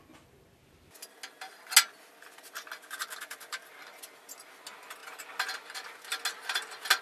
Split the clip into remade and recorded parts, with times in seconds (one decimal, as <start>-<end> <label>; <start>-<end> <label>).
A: 0.0-7.0 recorded